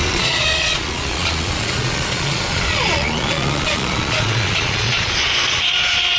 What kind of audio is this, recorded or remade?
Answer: remade